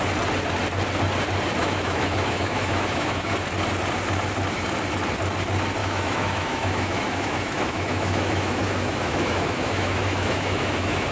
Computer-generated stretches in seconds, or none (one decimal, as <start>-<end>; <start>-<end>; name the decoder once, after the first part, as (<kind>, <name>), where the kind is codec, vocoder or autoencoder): 1.6-3.3 (autoencoder, DAC-VAE); 5.8-11.1